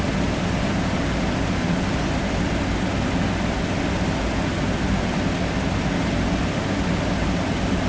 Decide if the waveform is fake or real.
real